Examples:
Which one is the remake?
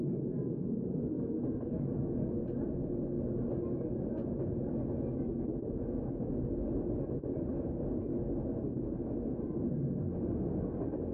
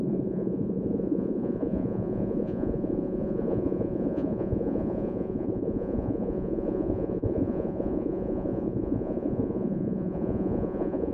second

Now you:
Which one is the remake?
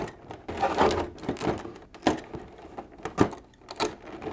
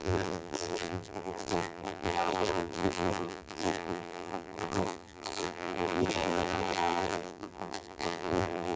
second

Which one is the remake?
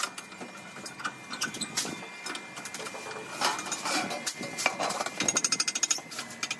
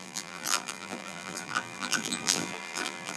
second